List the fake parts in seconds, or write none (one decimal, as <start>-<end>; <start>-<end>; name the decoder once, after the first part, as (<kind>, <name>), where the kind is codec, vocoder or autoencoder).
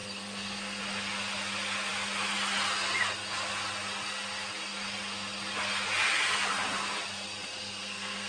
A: 0.0-0.8 (codec, SNAC); 7.6-8.3